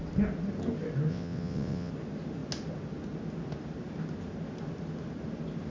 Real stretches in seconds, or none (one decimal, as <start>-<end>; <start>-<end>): 0.0-1.1; 1.9-5.7